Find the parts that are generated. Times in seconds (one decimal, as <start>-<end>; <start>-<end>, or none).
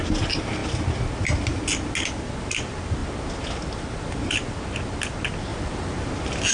none